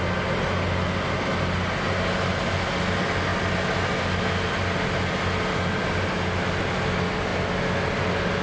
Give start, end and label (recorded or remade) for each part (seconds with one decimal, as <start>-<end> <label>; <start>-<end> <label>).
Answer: 0.0-8.4 recorded